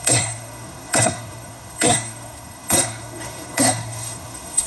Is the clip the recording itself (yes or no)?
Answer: no